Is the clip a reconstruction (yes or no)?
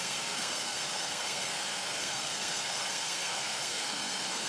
yes